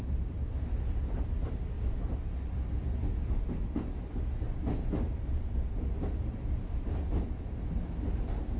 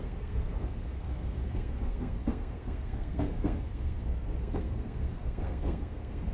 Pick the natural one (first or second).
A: first